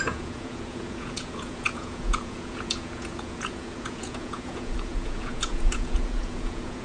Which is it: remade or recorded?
remade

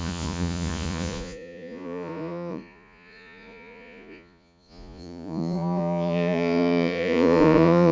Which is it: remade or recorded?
remade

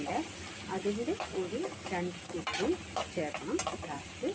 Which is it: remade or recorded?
recorded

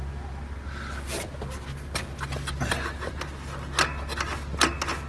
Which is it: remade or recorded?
recorded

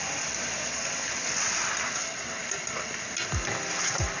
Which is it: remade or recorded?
recorded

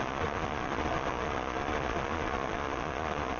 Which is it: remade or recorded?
remade